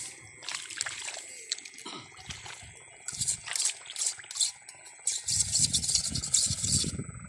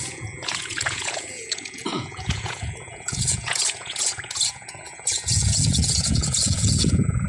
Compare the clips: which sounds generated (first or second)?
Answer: second